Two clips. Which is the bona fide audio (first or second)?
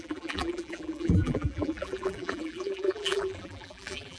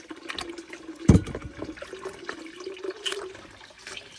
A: second